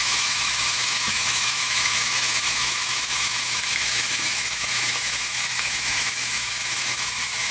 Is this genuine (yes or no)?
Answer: no